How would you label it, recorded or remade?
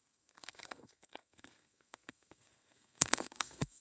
remade